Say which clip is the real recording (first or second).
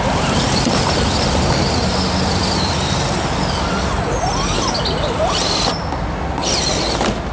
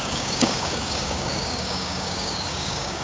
first